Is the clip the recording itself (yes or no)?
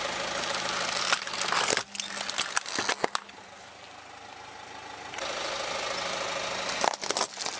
yes